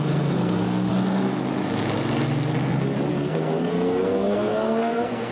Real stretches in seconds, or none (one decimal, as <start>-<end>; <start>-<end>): 0.9-3.1